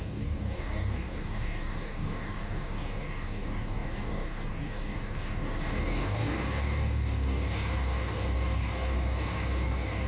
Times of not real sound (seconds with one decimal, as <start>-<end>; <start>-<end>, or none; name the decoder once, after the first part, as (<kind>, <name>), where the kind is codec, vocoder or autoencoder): 0.0-10.1 (codec, DAC)